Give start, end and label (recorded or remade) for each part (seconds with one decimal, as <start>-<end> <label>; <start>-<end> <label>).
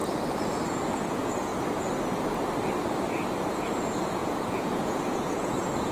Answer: 0.0-0.7 recorded; 0.7-1.5 remade; 1.5-3.5 recorded; 3.5-5.9 remade